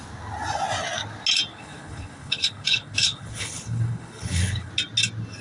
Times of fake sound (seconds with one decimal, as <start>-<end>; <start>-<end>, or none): 1.5-4.7